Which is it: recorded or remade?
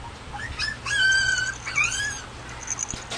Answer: recorded